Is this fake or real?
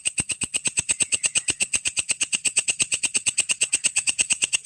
fake